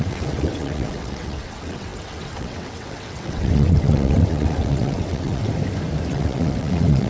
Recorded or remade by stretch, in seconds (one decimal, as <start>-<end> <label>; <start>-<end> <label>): 0.0-5.5 remade; 5.5-6.1 recorded; 6.1-7.1 remade